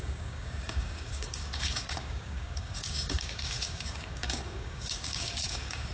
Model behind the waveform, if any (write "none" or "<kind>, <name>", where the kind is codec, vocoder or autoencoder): codec, DAC